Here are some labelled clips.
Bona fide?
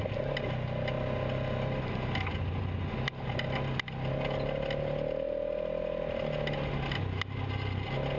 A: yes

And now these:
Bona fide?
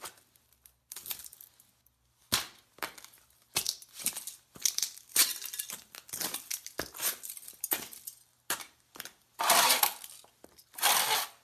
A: yes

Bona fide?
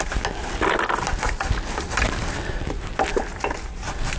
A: yes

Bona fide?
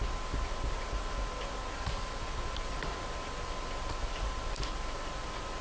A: yes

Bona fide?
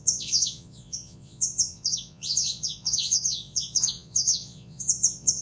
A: no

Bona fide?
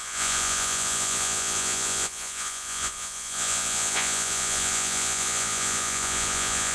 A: no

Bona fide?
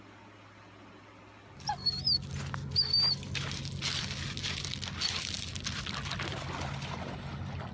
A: yes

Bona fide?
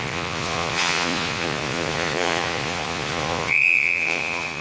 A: no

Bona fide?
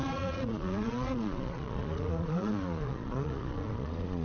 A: no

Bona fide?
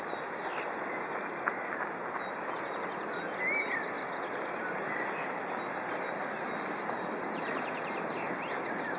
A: yes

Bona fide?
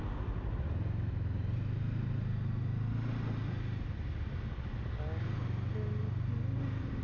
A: yes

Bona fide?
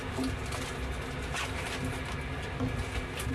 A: yes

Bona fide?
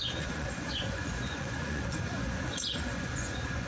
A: no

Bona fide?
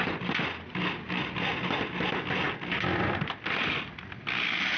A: yes